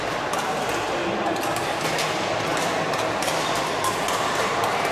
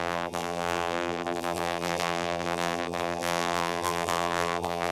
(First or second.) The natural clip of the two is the first